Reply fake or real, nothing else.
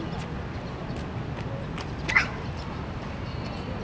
real